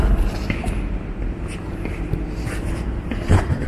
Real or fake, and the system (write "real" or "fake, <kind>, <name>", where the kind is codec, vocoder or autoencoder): fake, vocoder, BigVGAN v2